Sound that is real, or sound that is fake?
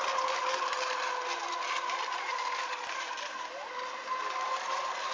real